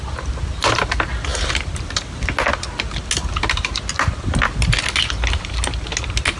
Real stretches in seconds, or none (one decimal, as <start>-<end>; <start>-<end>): 0.0-6.4